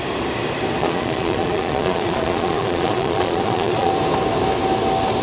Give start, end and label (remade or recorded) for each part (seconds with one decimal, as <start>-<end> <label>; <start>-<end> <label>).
0.0-0.8 recorded; 0.8-3.9 remade; 3.9-5.2 recorded